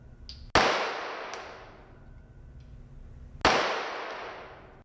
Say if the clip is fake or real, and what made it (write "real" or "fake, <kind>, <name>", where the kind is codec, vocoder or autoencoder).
real